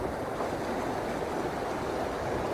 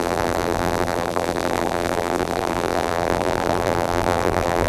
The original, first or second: first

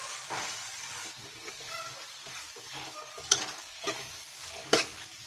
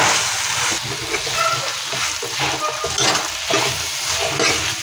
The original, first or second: second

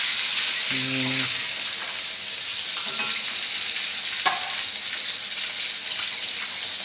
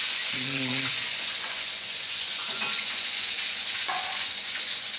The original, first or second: first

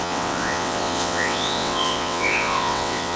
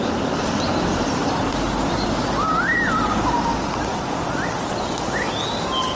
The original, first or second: second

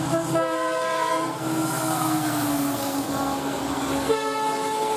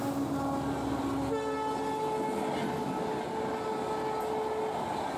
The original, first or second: second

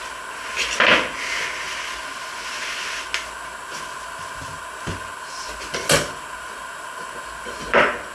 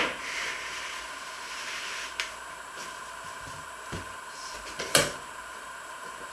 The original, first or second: first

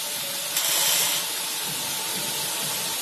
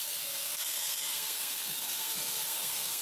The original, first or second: first